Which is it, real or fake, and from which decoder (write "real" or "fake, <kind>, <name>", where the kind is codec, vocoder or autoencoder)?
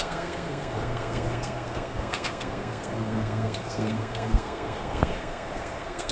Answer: fake, codec, SNAC